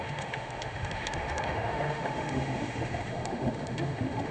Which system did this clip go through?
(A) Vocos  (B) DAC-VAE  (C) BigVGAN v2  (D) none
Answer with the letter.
B